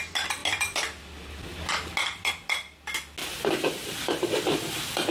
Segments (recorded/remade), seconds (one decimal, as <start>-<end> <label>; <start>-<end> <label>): 0.0-5.1 recorded